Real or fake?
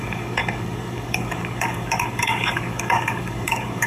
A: fake